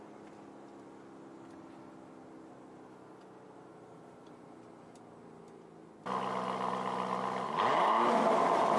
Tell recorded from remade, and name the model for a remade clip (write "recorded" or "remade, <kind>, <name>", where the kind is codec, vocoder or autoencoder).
recorded